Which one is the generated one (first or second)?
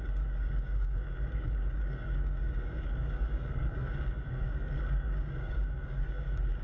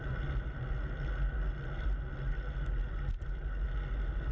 first